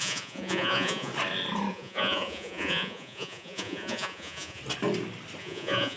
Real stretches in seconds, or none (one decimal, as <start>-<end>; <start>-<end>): 1.1-1.7; 4.6-5.4